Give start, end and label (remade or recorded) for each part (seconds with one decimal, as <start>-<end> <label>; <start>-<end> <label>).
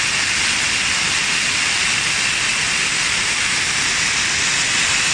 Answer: 0.0-5.1 recorded